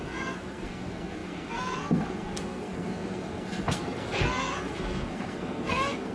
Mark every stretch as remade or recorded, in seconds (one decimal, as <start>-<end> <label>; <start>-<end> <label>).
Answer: 0.0-6.1 remade